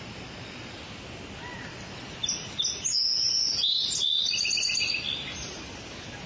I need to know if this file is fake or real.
real